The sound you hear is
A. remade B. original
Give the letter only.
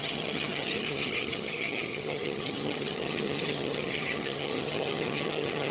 A